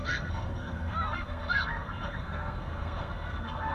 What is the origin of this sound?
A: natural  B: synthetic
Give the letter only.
B